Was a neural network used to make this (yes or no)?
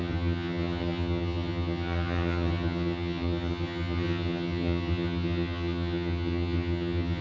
yes